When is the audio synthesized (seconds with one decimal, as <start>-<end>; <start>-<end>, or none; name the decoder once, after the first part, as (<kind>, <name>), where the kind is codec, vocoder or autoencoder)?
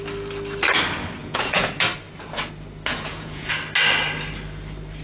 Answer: 1.2-1.8 (vocoder, Vocos); 2.9-3.5